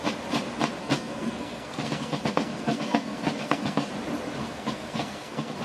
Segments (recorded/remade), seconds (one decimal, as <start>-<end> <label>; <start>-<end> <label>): 0.0-0.8 recorded; 0.8-3.9 remade; 3.9-4.4 recorded; 4.4-5.6 remade